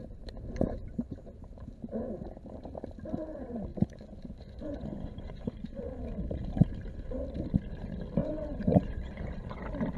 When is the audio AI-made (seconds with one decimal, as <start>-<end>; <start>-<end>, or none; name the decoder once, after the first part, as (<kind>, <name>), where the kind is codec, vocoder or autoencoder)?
3.7-5.9 (vocoder, Vocos); 8.2-9.6